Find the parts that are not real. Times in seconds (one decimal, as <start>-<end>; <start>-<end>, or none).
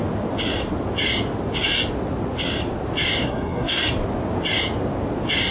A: 3.2-3.8